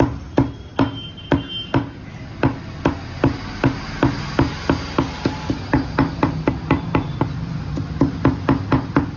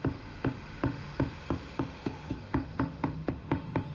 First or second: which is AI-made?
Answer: second